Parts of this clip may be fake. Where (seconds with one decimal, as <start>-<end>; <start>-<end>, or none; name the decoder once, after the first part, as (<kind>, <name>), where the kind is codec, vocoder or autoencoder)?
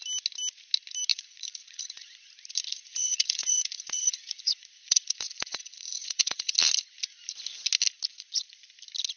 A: 1.1-2.3 (vocoder, Vocos); 2.7-6.5; 8.1-8.7